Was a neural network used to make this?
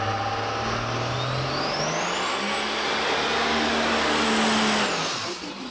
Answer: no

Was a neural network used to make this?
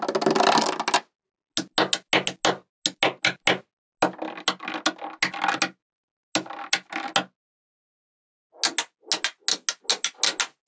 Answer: no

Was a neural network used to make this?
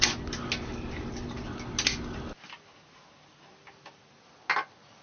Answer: no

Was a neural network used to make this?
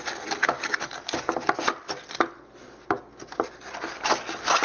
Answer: no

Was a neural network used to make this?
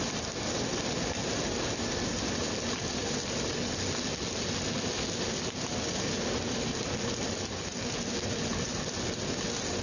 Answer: no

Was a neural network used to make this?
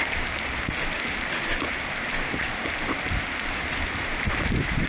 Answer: no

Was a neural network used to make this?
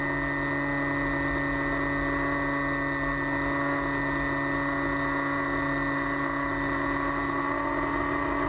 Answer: no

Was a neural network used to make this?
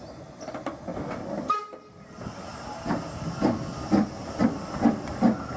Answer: no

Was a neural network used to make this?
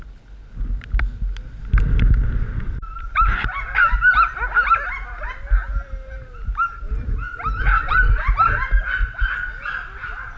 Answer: no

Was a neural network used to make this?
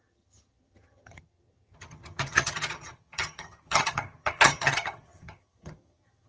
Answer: yes